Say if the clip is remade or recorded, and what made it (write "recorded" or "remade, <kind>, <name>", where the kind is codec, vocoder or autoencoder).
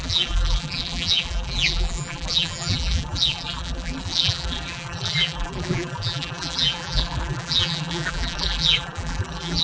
remade, vocoder, BigVGAN v2